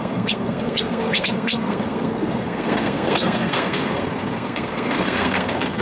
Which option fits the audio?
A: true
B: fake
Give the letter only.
B